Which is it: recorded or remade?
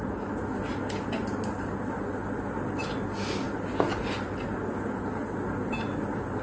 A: recorded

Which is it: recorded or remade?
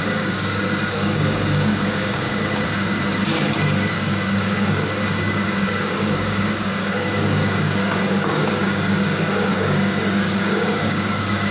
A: remade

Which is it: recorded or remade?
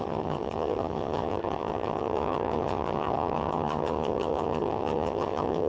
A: remade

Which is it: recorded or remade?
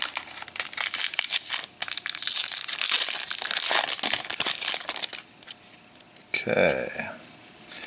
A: recorded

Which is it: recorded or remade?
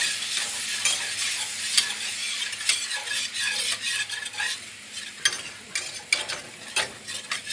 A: recorded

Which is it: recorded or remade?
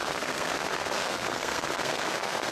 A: remade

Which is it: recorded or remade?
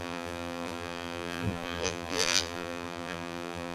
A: remade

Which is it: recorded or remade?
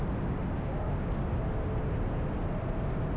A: recorded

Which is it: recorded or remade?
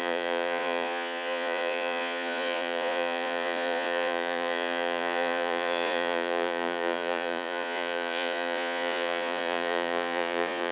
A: remade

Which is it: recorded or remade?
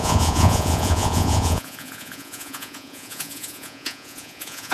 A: remade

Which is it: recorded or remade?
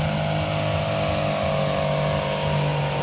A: recorded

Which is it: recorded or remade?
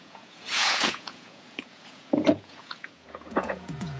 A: remade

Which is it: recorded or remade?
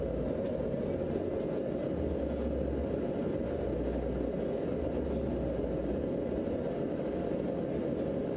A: recorded